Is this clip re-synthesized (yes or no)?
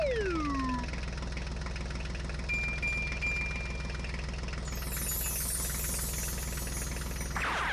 no